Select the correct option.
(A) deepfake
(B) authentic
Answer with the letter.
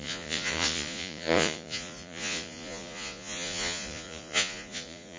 A